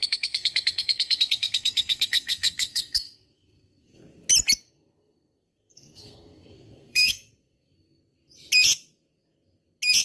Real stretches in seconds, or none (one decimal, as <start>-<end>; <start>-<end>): 4.0-4.6; 8.0-10.0